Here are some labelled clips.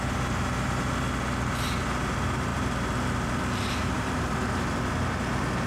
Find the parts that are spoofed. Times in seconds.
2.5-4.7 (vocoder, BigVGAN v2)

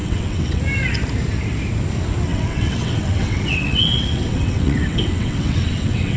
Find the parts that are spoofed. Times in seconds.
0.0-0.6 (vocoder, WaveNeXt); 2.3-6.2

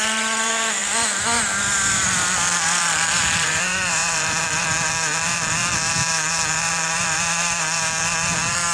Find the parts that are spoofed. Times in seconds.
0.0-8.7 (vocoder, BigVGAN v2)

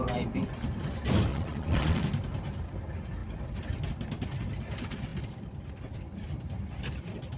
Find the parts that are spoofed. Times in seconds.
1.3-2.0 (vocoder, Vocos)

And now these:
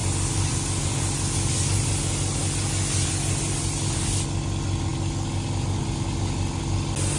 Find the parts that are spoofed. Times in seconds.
none

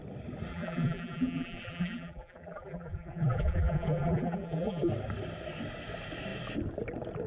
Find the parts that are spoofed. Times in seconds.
0.5-4.9 (vocoder, BigVGAN v2)

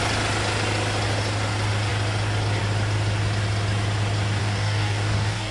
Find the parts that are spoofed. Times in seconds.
4.4-5.5 (codec, DAC)